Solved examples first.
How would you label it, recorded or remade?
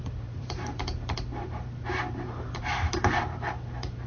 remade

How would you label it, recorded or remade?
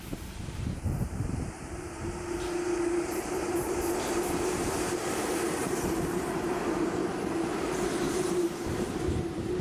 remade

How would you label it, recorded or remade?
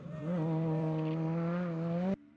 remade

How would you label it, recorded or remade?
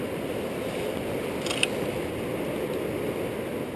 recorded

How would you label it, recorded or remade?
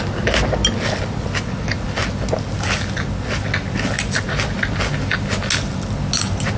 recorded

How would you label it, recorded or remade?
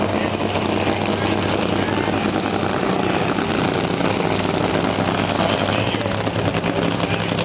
recorded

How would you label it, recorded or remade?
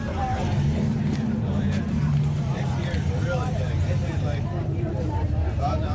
remade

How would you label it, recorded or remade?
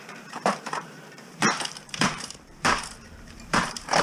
remade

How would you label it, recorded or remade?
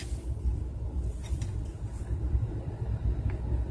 remade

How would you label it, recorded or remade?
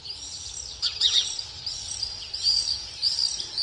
remade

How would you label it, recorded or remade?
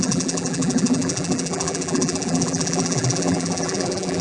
remade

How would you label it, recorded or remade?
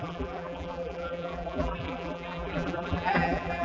remade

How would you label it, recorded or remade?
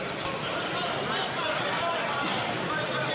remade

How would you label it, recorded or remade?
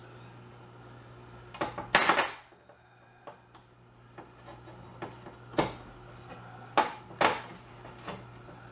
recorded